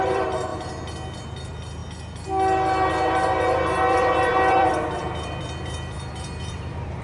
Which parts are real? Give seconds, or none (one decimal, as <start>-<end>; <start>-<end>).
0.5-1.2; 1.8-3.8